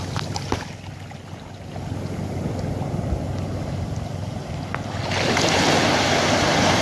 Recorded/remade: recorded